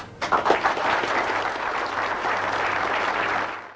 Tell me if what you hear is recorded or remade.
recorded